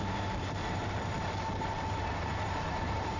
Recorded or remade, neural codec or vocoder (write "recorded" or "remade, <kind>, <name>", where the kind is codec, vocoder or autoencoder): remade, vocoder, BigVGAN v2